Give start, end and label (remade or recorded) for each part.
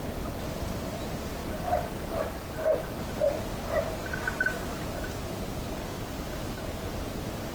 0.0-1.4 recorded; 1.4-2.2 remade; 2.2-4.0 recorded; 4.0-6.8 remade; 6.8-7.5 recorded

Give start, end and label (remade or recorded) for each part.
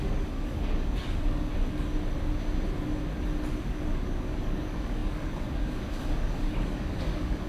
0.0-1.5 remade; 1.5-3.6 recorded; 3.6-7.5 remade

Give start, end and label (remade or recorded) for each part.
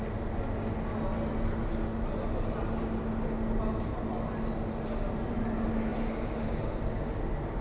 0.0-7.6 recorded